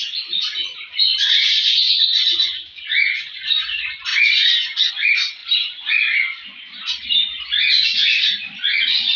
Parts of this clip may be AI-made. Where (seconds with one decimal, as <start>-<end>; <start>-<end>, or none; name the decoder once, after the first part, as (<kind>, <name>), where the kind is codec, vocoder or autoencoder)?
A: 5.4-5.9 (vocoder, BigVGAN v2)